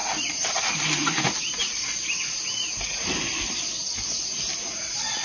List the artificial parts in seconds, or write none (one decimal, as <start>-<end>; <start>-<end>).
0.0-0.6